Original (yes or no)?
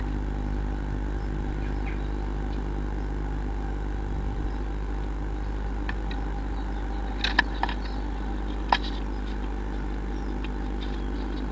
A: yes